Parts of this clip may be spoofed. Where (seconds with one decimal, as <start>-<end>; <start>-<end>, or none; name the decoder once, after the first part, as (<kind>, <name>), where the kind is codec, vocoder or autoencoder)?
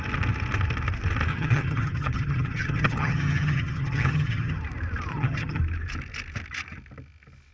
1.3-4.6 (vocoder, HiFi-GAN); 5.1-5.6